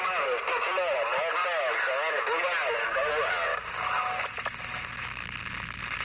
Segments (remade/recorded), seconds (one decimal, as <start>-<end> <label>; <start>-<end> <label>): 0.0-6.0 recorded